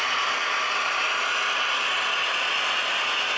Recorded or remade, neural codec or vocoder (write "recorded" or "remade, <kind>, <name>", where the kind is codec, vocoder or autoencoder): recorded